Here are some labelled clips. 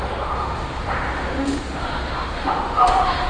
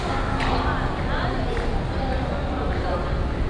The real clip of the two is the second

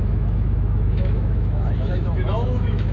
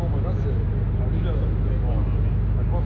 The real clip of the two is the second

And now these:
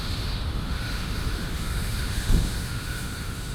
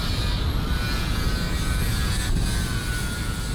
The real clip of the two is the second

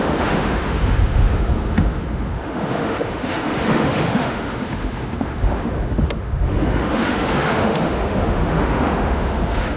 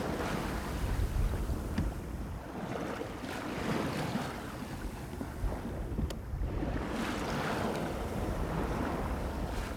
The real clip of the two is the second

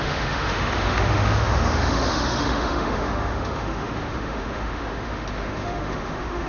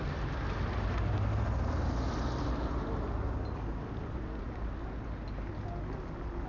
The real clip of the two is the second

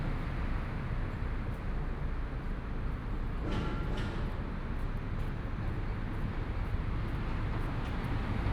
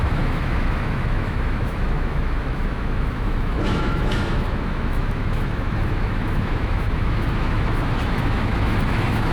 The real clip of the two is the first